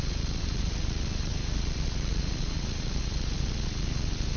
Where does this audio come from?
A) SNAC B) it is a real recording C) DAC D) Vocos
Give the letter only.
D